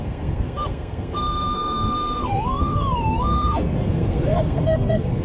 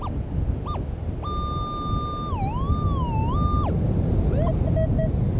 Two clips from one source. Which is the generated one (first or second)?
first